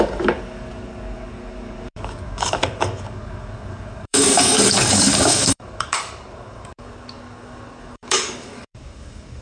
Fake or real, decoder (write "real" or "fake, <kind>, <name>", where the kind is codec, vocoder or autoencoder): fake, codec, DAC